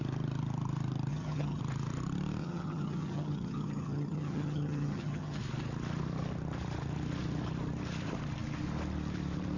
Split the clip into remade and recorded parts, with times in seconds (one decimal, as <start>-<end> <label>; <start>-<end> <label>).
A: 0.0-1.1 recorded; 1.1-1.6 remade; 1.6-2.4 recorded; 2.4-5.4 remade; 5.4-9.6 recorded

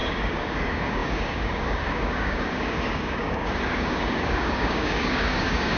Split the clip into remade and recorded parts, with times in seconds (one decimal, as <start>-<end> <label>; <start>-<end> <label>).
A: 0.0-5.8 remade

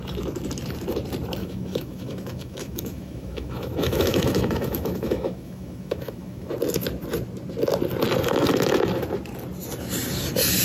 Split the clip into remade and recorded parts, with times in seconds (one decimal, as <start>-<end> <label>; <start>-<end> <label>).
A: 0.0-1.4 recorded; 1.4-6.5 remade; 6.5-10.6 recorded

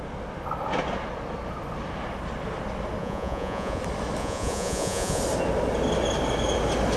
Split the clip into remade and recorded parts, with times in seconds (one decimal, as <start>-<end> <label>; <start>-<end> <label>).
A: 0.0-3.0 recorded; 3.0-3.8 remade; 3.8-4.2 recorded; 4.2-5.2 remade; 5.2-7.0 recorded

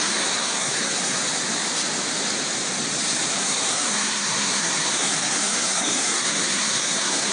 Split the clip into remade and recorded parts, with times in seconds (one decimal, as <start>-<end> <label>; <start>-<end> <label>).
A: 0.0-1.2 remade; 1.2-3.4 recorded; 3.4-7.3 remade

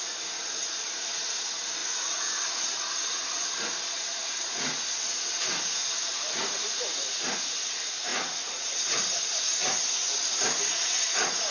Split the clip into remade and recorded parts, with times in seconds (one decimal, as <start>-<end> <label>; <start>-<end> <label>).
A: 0.0-11.5 remade

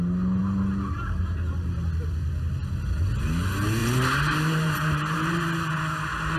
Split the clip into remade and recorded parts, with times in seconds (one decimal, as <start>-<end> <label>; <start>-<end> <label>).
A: 0.0-3.8 recorded; 3.8-6.4 remade

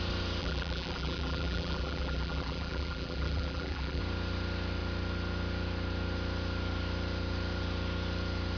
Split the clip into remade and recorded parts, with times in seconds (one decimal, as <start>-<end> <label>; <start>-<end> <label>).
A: 0.0-0.4 recorded; 0.4-4.0 remade; 4.0-8.6 recorded